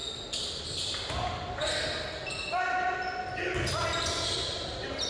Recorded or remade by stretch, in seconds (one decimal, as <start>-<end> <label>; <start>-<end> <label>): 0.0-5.1 recorded